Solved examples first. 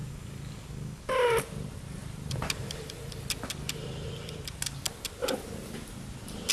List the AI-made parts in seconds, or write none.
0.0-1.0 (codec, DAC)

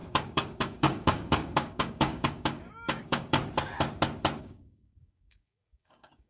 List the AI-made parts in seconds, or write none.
0.0-3.4 (codec, DAC); 4.4-6.3